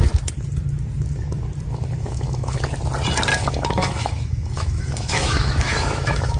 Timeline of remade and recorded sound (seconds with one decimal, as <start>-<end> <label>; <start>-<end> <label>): 0.0-1.7 recorded; 1.7-2.7 remade; 2.7-3.3 recorded; 3.3-6.4 remade

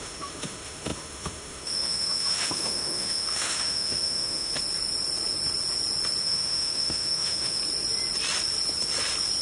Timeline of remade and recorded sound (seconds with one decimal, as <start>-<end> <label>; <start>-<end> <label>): 0.0-4.5 remade; 4.5-6.2 recorded; 6.2-7.6 remade; 7.6-9.4 recorded

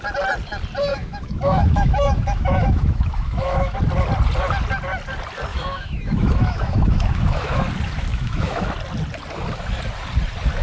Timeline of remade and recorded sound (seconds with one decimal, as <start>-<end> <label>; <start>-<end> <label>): 0.0-0.9 recorded; 0.9-3.8 remade; 3.8-5.5 recorded; 5.5-7.6 remade; 7.6-8.1 recorded; 8.1-8.7 remade; 8.7-10.6 recorded

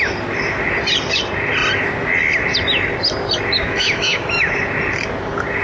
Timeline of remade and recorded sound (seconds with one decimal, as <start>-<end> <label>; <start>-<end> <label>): 0.0-3.6 recorded; 3.6-4.3 remade; 4.3-5.6 recorded

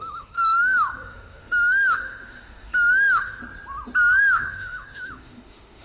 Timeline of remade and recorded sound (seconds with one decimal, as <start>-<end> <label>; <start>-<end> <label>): 0.0-3.4 remade; 3.4-4.2 recorded; 4.2-5.8 remade

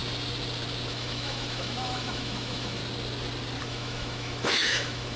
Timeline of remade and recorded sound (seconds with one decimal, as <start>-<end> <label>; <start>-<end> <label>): 0.0-0.9 recorded; 0.9-2.8 remade; 2.8-3.6 recorded; 3.6-5.2 remade